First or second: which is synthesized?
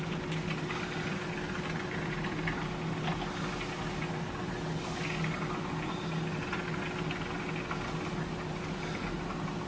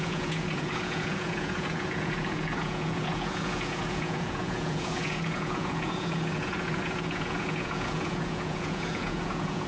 second